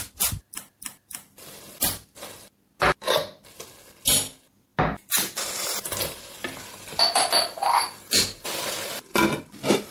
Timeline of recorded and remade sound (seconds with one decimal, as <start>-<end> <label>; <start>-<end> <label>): 0.0-9.9 recorded